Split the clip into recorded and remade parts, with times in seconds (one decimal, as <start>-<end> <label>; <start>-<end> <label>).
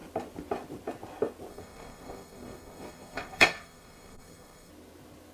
0.0-1.5 recorded; 1.5-4.7 remade; 4.7-5.3 recorded